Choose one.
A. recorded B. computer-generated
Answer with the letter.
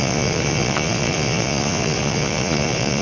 B